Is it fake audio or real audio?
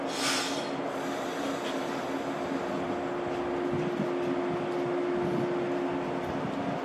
real